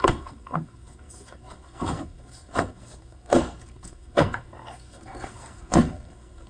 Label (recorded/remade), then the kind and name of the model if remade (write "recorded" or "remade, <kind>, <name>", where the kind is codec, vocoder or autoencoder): remade, codec, SNAC